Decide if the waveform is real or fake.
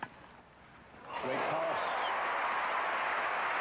real